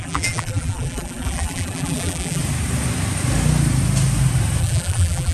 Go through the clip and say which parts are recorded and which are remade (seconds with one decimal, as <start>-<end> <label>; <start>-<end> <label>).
0.0-2.4 remade; 2.4-4.6 recorded; 4.6-5.3 remade